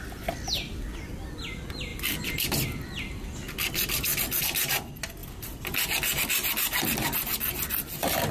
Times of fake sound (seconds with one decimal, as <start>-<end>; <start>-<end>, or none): 5.2-5.8